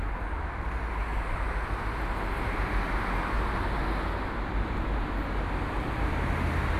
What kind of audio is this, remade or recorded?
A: recorded